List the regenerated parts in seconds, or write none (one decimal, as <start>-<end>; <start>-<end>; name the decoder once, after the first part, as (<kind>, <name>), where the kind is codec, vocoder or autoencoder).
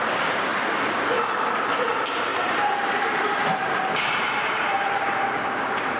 0.0-0.5 (vocoder, BigVGAN v2); 1.9-6.0